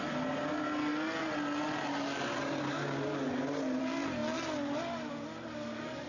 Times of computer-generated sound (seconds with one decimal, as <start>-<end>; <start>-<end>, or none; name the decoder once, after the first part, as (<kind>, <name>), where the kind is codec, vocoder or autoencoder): none